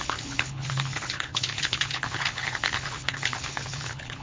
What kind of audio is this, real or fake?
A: fake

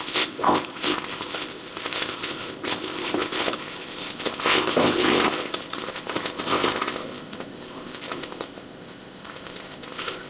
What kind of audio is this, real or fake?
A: fake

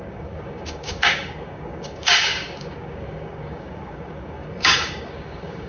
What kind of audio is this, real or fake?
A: fake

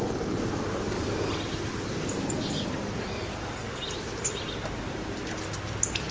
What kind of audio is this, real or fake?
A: real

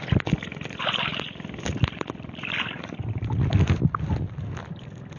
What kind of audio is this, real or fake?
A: real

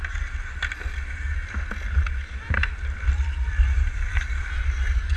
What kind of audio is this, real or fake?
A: real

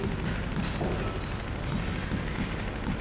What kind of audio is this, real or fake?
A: real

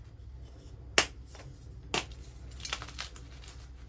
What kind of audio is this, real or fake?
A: real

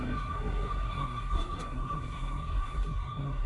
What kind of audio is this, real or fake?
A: fake